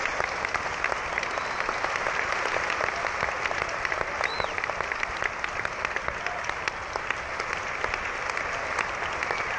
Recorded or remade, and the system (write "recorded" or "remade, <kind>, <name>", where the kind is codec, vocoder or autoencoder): recorded